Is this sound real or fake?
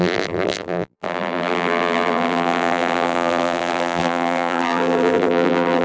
fake